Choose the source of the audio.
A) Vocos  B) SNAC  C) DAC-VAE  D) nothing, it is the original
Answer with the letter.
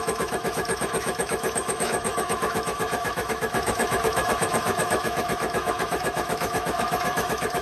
C